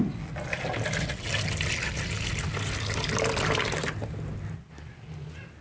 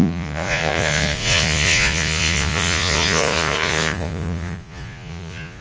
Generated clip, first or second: second